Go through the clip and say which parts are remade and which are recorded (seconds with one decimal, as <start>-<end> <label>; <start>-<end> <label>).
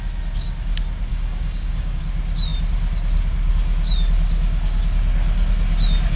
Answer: 0.0-1.1 recorded; 1.1-2.0 remade; 2.0-6.2 recorded